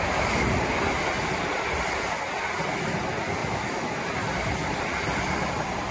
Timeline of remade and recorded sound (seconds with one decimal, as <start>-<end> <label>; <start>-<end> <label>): 0.0-3.4 recorded; 3.4-3.9 remade; 3.9-5.9 recorded